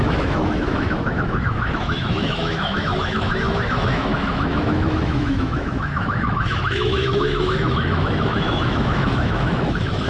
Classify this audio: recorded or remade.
remade